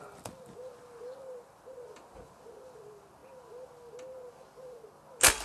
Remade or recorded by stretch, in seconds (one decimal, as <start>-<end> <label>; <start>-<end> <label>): 0.0-5.4 recorded